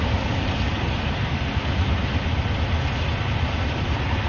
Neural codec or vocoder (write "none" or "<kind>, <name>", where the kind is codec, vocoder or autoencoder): none